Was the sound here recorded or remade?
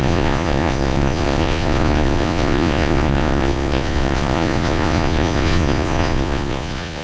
remade